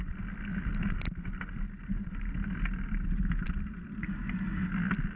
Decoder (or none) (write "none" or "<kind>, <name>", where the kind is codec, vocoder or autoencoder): none